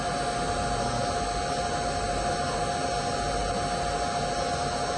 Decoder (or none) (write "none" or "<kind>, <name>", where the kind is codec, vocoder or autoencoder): none